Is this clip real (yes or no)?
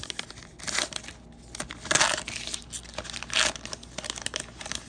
yes